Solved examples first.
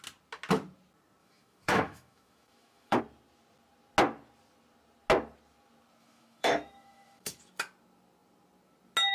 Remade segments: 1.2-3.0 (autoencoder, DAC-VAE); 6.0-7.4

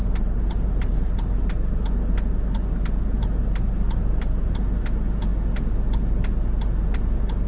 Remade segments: 0.0-4.5 (vocoder, BigVGAN v2)

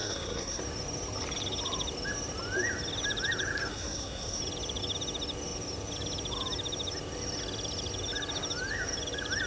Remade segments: 0.0-0.6 (codec, SNAC); 3.7-4.4

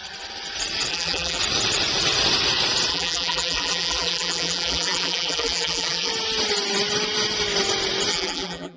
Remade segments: 0.9-1.4 (vocoder, BigVGAN v2); 2.9-6.1; 8.1-8.8

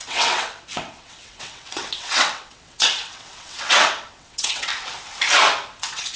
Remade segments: 0.0-4.7 (vocoder, WaveNeXt); 5.8-6.2

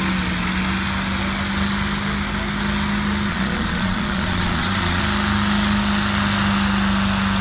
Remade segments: 3.3-5.0 (vocoder, Vocos)